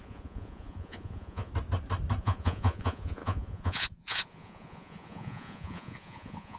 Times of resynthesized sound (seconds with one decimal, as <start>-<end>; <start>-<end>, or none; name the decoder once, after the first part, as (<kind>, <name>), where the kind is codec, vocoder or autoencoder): 0.0-1.5 (vocoder, Vocos); 2.2-6.6